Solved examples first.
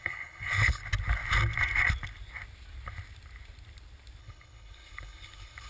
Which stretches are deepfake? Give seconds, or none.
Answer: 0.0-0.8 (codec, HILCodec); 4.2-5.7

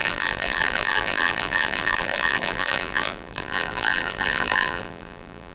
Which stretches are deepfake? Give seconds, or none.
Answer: 0.0-5.5 (vocoder, BigVGAN v2)